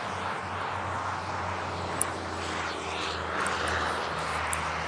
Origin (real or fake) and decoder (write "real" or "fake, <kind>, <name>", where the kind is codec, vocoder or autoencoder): real